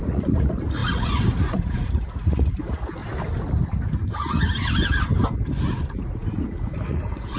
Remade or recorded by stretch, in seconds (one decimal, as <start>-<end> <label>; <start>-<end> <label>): 0.0-3.0 remade; 3.0-5.7 recorded; 5.7-7.4 remade